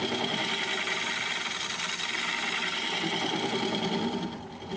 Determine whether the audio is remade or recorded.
recorded